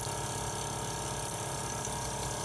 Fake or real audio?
real